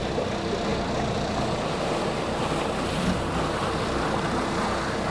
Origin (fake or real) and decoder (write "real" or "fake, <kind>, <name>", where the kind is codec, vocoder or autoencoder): real